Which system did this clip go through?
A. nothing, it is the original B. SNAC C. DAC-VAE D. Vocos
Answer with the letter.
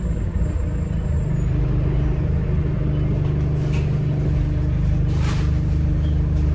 A